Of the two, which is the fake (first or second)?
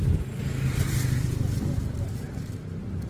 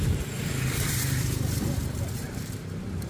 second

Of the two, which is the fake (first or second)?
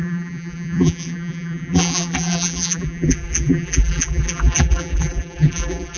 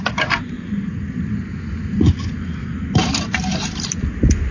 first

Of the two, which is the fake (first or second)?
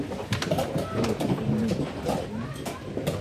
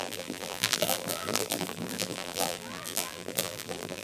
second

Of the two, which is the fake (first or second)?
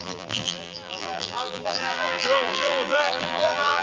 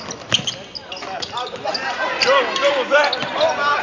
first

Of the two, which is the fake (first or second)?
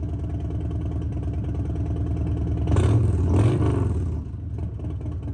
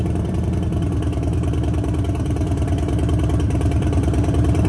second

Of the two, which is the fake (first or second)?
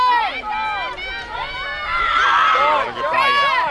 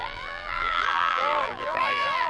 second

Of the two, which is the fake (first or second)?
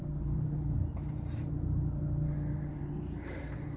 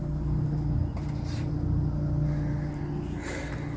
first